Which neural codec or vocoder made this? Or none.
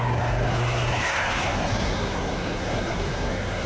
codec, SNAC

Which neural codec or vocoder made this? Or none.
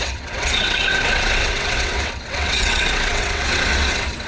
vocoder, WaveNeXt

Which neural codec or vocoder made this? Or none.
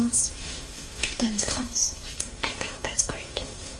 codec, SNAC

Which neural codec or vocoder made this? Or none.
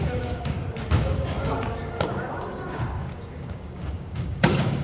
codec, DAC